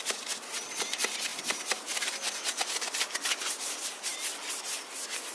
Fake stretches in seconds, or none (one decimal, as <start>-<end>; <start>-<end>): none